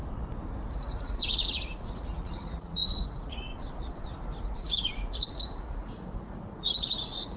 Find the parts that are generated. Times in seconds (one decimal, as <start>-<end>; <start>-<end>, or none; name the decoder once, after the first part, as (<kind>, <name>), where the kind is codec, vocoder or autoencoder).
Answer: 0.7-3.5 (vocoder, Vocos); 4.4-7.4